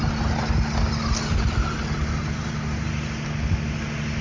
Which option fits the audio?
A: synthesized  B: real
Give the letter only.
B